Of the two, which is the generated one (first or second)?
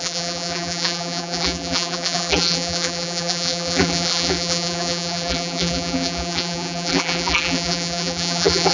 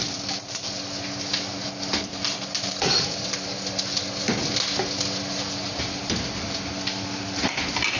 first